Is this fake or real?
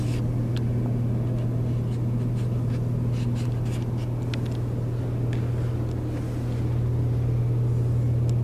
real